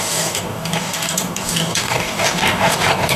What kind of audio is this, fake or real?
fake